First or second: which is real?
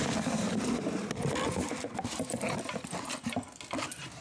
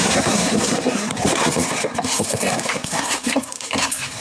first